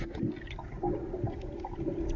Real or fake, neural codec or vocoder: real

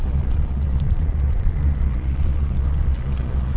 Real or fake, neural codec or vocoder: fake, vocoder, Vocos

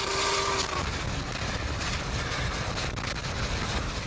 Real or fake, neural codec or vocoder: real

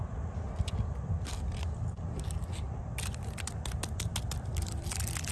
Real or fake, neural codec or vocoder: real